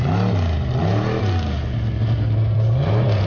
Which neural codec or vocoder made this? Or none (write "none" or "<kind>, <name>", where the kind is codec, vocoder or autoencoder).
none